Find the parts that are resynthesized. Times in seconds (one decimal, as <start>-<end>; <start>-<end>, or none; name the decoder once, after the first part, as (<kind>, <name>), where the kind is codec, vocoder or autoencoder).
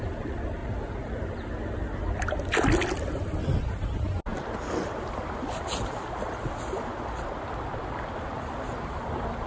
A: 0.6-1.2 (vocoder, Vocos)